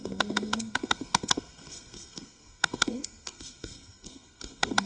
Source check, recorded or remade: remade